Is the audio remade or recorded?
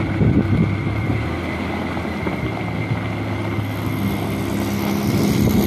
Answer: recorded